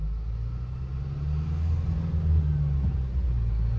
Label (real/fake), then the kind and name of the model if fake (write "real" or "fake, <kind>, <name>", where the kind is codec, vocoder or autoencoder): real